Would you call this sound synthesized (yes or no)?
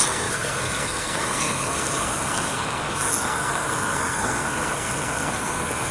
yes